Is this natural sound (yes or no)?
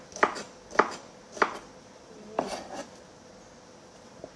yes